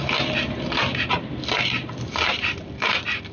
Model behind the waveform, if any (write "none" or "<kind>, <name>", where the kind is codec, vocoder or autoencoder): none